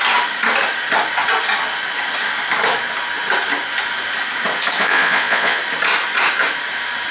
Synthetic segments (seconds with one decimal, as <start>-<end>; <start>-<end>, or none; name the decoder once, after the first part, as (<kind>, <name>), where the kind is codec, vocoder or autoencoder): 4.8-5.6 (vocoder, Vocos)